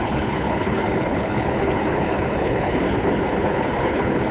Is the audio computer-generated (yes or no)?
yes